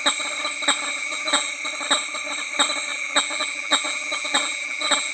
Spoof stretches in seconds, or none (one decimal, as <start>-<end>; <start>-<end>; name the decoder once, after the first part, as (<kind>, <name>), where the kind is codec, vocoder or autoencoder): 0.9-1.5 (vocoder, BigVGAN v2); 2.9-5.1